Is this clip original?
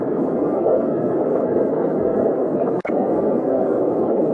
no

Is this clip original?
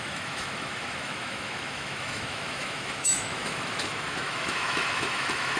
no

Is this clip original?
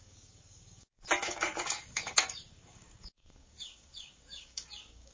no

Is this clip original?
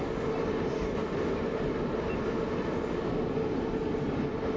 yes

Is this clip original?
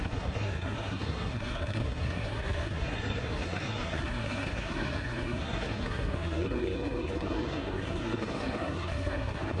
no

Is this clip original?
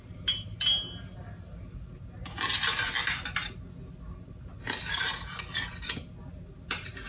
yes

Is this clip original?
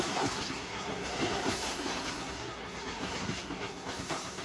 no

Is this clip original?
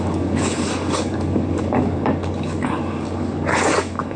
no